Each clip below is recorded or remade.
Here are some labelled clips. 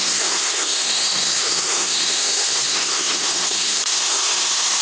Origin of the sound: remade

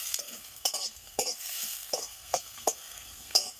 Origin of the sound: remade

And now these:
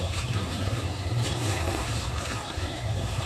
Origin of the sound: remade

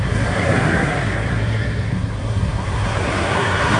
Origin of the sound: remade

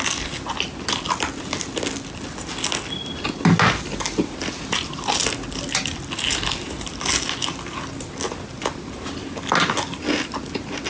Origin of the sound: recorded